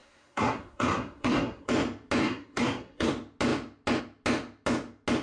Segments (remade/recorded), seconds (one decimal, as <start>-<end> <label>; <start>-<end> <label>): 0.0-1.7 remade; 1.7-2.2 recorded; 2.2-3.1 remade; 3.1-5.2 recorded